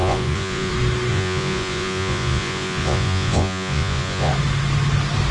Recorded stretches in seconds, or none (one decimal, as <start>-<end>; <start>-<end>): 0.7-1.1; 4.3-5.3